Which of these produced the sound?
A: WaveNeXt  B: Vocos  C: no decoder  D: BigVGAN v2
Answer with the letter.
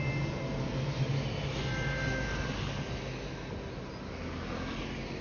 C